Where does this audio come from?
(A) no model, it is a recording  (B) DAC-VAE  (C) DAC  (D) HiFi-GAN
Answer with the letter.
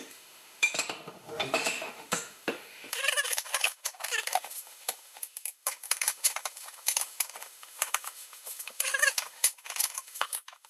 B